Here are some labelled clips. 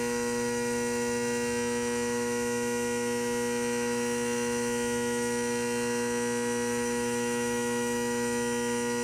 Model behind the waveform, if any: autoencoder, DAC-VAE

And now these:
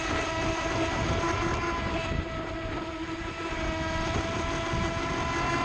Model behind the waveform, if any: none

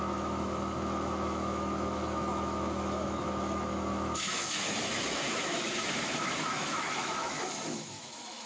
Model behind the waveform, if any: autoencoder, DAC-VAE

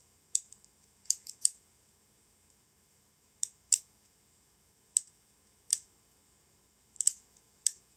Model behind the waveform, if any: autoencoder, DAC-VAE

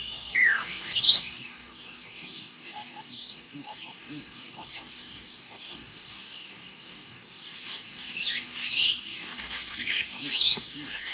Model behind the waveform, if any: codec, DAC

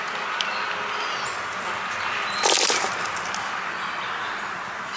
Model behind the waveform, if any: none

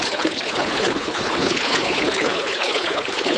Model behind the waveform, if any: codec, HILCodec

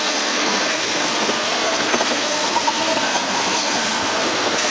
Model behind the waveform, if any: codec, SNAC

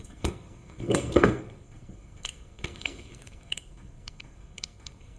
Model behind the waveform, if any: codec, SNAC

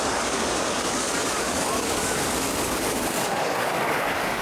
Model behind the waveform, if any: codec, DAC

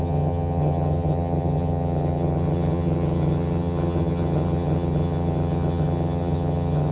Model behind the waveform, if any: vocoder, HiFi-GAN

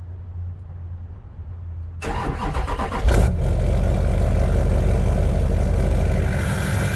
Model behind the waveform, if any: none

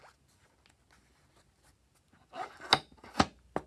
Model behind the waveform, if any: none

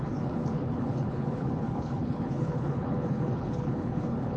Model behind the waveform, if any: codec, HILCodec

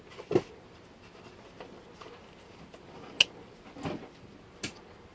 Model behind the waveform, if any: none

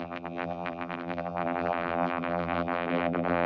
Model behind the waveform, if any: vocoder, BigVGAN v2